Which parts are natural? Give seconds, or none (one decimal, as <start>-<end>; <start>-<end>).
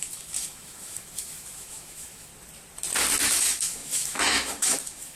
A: 2.3-3.3